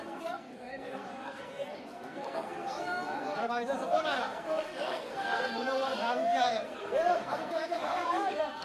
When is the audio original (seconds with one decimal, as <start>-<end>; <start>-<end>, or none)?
none